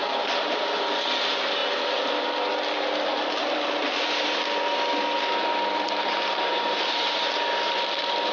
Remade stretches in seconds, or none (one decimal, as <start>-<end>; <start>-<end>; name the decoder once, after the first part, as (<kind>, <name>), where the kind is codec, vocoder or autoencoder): 0.0-0.8 (vocoder, BigVGAN v2)